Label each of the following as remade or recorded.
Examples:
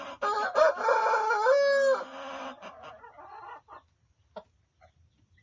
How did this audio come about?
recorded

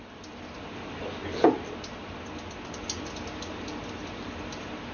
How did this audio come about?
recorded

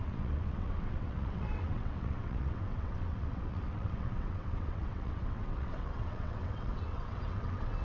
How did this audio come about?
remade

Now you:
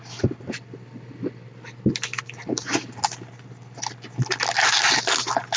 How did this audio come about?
recorded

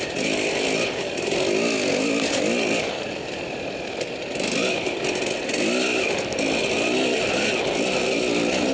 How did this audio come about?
recorded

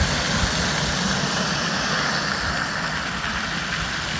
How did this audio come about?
recorded